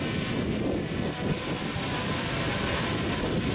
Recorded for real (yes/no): yes